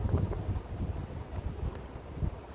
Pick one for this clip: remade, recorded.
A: recorded